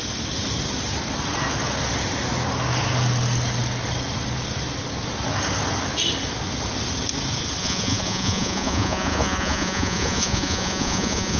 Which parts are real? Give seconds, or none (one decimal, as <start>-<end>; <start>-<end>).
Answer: 0.0-7.6